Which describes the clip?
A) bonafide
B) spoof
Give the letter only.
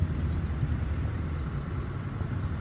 A